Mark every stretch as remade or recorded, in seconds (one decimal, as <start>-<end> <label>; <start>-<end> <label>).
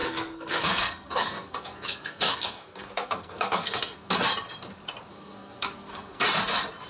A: 0.0-4.1 remade; 4.1-5.1 recorded; 5.1-6.2 remade; 6.2-6.9 recorded